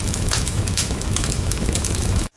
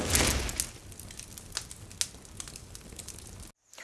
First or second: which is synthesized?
first